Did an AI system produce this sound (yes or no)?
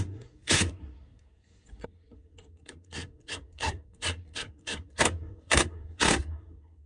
yes